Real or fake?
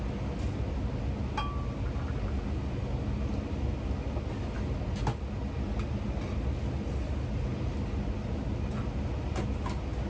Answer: real